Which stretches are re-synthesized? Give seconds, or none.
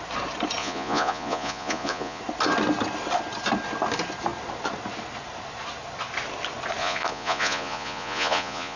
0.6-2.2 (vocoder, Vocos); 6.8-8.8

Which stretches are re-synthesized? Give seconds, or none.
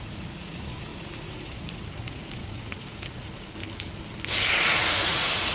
0.0-3.6 (vocoder, Vocos); 4.5-5.5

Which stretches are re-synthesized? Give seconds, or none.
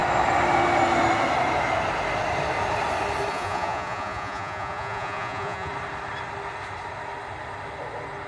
3.3-5.7 (vocoder, Vocos)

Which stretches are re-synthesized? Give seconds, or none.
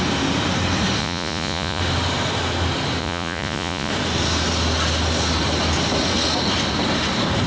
1.0-1.8 (vocoder, Vocos); 3.0-3.9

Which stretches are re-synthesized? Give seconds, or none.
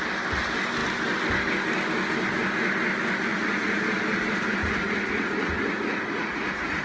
3.3-3.8 (vocoder, Vocos); 4.6-6.8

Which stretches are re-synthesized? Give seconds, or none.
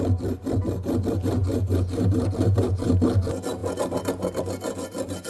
none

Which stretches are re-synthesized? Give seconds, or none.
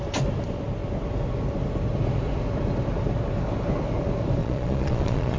4.4-5.4 (vocoder, Vocos)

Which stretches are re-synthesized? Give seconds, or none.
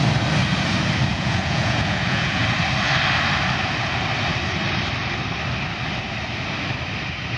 1.1-2.4 (vocoder, Vocos)